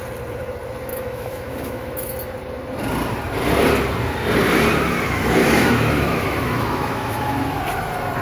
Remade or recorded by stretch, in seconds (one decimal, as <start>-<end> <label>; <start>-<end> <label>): 0.0-0.9 recorded; 0.9-2.1 remade; 2.1-5.4 recorded; 5.4-7.6 remade; 7.6-8.2 recorded